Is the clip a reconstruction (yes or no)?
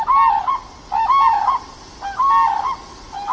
no